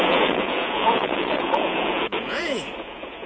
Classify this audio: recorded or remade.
remade